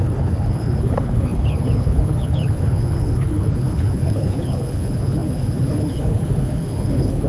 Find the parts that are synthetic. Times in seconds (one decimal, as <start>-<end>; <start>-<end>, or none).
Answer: 0.0-7.3